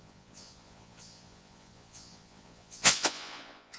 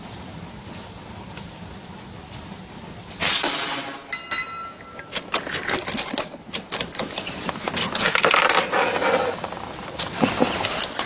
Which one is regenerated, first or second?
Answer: first